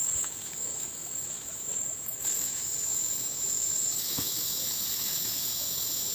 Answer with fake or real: fake